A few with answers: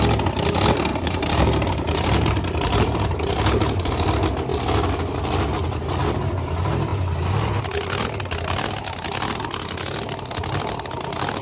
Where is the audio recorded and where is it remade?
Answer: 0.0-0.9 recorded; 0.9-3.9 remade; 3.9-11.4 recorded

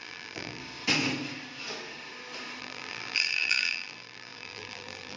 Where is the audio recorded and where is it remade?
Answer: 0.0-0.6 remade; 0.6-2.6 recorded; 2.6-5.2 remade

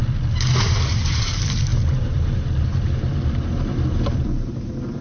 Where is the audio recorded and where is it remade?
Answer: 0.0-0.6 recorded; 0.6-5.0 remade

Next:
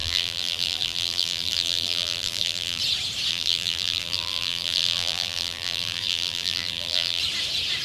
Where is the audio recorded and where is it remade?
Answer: 0.0-2.8 remade; 2.8-3.3 recorded; 3.3-7.2 remade; 7.2-7.8 recorded